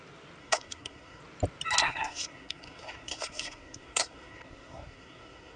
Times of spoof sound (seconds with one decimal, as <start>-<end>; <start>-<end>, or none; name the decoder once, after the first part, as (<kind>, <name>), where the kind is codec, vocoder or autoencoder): 0.4-1.2 (codec, SNAC); 1.8-5.6